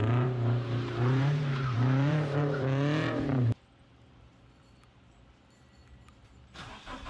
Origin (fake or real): fake